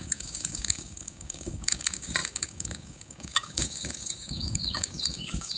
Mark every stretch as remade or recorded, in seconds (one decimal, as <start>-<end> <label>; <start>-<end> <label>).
0.0-5.6 remade